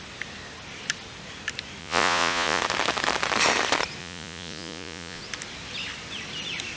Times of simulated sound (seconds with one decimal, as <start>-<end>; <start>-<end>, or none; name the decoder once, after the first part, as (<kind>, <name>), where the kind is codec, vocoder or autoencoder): 1.8-2.6 (vocoder, Vocos); 4.0-5.2